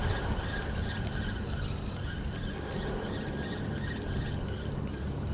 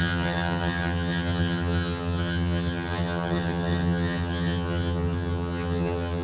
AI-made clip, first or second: second